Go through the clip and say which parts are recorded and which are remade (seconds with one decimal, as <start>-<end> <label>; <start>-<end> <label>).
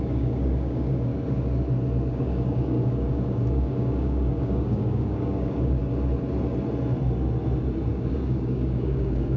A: 0.0-1.1 remade; 1.1-2.1 recorded; 2.1-5.8 remade; 5.8-7.9 recorded; 7.9-9.4 remade